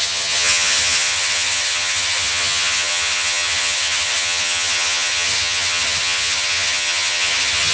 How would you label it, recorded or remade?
remade